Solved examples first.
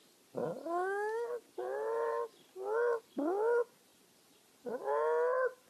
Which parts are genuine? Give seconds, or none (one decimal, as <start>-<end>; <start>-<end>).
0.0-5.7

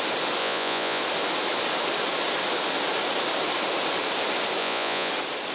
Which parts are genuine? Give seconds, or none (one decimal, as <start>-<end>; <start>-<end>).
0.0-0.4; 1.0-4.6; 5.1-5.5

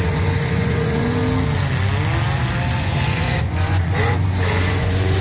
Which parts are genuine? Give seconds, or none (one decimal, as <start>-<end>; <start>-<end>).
1.2-2.8

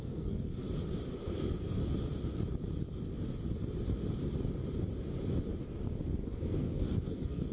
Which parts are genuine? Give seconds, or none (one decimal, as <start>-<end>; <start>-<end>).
0.6-1.3; 1.8-6.3

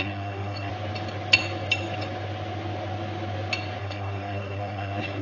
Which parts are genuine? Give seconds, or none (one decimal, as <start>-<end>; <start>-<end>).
0.7-3.8

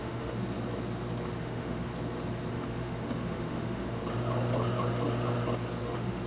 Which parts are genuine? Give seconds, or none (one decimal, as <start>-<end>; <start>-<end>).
0.4-1.4; 1.9-2.5; 4.0-5.8